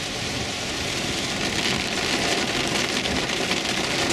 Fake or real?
real